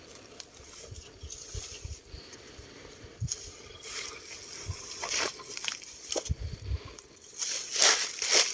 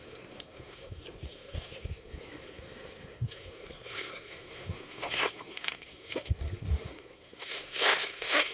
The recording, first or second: first